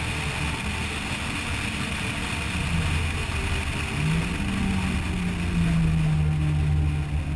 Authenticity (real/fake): real